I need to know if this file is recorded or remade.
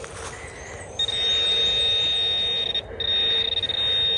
recorded